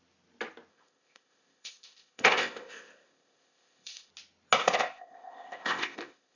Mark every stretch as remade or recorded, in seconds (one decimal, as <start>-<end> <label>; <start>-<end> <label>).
0.0-0.7 recorded; 0.7-4.1 remade; 4.1-4.6 recorded; 4.6-6.4 remade